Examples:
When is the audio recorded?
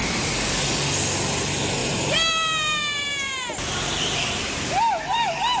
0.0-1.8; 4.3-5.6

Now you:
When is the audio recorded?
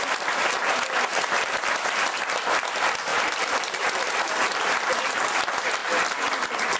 0.0-1.1; 1.7-3.1; 5.3-5.8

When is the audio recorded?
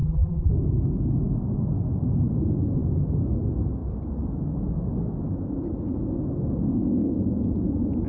0.5-8.1